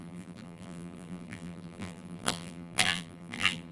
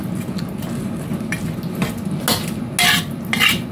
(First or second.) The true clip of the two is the second